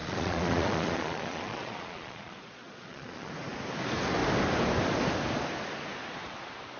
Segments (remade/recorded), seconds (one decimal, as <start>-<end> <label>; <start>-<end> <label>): 0.0-3.3 remade; 3.3-6.8 recorded